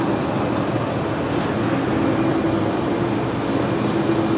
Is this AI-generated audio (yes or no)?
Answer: no